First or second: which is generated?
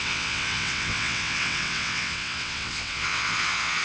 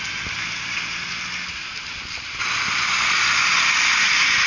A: first